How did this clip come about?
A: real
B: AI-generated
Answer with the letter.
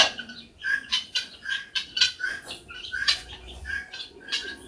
B